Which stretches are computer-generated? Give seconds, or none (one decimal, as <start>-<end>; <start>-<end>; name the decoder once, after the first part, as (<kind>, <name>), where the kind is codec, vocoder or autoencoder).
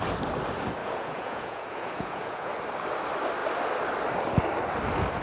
0.8-2.5 (vocoder, Vocos)